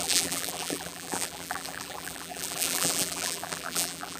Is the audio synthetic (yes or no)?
yes